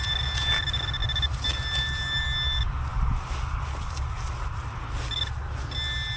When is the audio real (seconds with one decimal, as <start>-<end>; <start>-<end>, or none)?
0.0-6.2